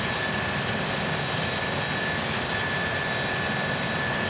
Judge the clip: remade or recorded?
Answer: recorded